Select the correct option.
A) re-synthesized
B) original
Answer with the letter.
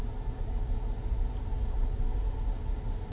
B